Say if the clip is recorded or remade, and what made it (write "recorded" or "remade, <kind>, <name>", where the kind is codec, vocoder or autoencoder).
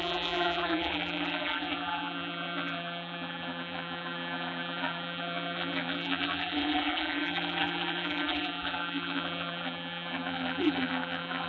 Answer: remade, vocoder, BigVGAN v2